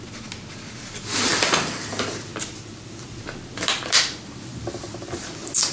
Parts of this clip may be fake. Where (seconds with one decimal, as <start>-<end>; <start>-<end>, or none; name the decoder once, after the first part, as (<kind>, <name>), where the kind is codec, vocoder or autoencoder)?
none